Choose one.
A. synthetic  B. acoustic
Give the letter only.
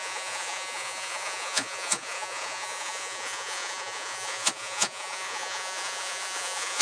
A